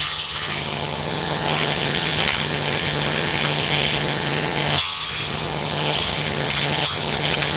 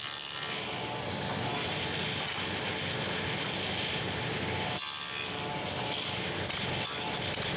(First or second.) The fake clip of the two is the first